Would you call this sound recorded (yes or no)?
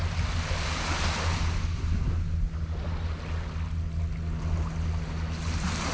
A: yes